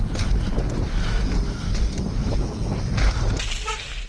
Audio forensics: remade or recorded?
recorded